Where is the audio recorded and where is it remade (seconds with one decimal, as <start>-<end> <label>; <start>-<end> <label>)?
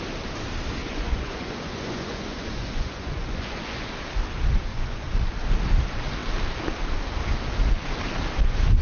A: 0.0-0.8 recorded; 0.8-3.9 remade; 3.9-4.7 recorded; 4.7-5.3 remade; 5.3-8.8 recorded